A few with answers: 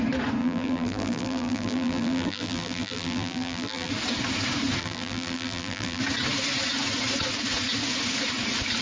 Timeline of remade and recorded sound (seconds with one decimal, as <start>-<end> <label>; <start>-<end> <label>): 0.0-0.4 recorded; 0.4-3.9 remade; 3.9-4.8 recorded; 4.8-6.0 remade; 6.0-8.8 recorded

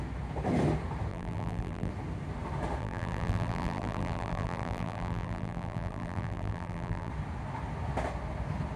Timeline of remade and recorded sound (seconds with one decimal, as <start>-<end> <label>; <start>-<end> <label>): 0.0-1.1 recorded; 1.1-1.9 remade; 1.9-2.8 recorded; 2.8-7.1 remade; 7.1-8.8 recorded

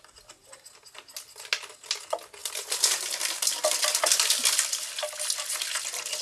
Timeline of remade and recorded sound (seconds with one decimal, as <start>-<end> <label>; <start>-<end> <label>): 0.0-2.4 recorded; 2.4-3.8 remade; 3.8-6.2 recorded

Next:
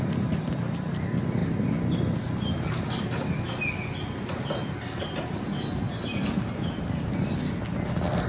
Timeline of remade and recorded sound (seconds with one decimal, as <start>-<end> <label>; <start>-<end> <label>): 0.0-8.3 recorded